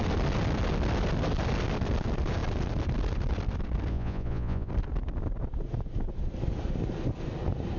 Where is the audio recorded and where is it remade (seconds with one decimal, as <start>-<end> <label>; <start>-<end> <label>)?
0.0-3.9 recorded; 3.9-4.7 remade; 4.7-7.8 recorded